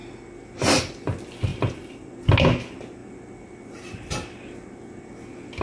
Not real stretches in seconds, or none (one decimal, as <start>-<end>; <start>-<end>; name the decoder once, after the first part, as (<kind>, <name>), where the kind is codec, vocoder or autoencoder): 1.5-2.1 (vocoder, BigVGAN v2)